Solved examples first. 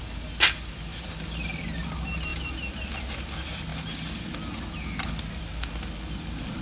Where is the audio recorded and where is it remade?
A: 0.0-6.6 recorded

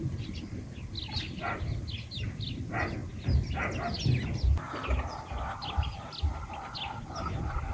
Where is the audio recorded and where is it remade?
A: 0.0-7.7 recorded

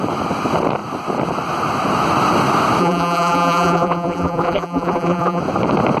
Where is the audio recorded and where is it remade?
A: 0.0-2.8 recorded; 2.8-5.4 remade; 5.4-6.0 recorded

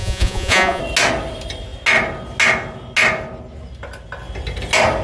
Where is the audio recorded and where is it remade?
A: 0.0-0.8 remade; 0.8-5.0 recorded

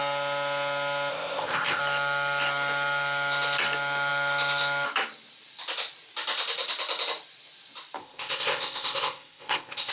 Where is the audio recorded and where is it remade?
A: 0.0-1.1 recorded; 1.1-1.8 remade; 1.8-8.0 recorded; 8.0-9.9 remade

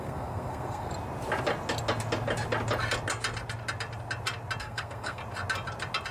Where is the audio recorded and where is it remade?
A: 0.0-0.9 remade; 0.9-4.6 recorded; 4.6-5.2 remade; 5.2-6.1 recorded

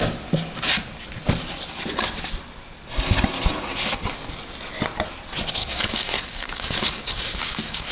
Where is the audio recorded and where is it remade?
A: 0.0-5.6 recorded; 5.6-7.9 remade